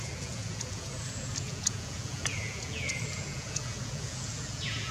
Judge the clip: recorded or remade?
remade